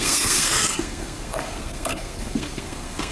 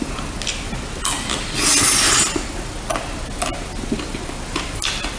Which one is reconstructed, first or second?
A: first